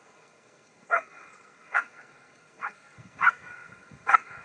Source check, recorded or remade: remade